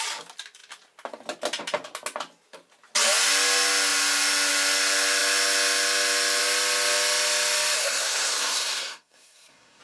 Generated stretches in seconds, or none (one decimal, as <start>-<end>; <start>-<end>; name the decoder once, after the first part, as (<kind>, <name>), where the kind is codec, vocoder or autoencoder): 7.8-9.8 (codec, SNAC)